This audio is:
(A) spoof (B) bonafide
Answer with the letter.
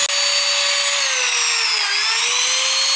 B